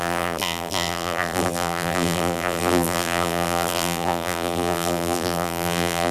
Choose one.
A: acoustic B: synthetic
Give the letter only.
B